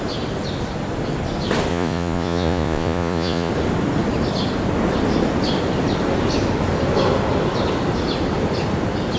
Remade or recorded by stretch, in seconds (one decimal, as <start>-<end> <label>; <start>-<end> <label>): 0.0-1.7 recorded; 1.7-3.5 remade; 3.5-9.2 recorded